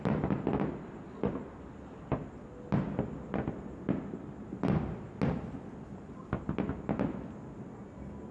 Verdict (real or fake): real